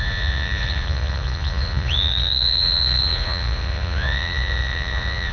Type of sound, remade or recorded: remade